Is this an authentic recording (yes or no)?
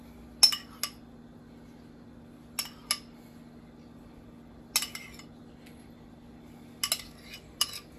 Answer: yes